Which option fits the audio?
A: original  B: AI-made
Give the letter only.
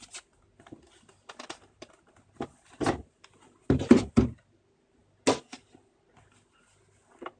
A